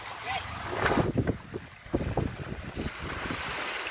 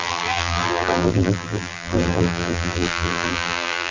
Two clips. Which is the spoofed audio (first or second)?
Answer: second